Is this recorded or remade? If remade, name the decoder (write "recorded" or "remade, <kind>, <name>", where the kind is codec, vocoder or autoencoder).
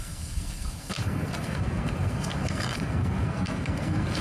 remade, codec, SNAC